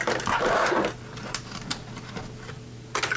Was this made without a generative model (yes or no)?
yes